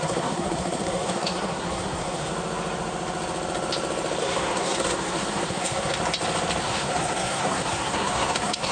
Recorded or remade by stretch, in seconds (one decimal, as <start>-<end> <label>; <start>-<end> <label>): 0.0-2.3 remade; 2.3-4.2 recorded; 4.2-6.0 remade; 6.0-6.6 recorded; 6.6-8.7 remade